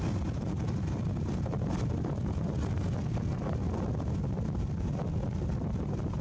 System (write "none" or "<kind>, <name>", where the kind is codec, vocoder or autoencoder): none